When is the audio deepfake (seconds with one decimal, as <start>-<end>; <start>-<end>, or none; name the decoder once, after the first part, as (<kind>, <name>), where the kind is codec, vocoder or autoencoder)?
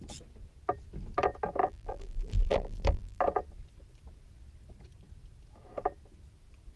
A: 1.6-3.2 (vocoder, BigVGAN v2)